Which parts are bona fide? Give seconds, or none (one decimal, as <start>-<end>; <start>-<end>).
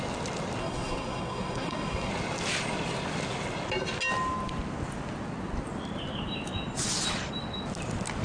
0.0-0.6; 2.1-8.2